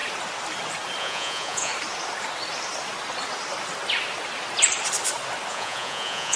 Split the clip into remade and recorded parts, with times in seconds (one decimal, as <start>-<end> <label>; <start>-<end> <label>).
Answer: 0.0-1.0 recorded; 1.0-1.7 remade; 1.7-5.5 recorded; 5.5-6.4 remade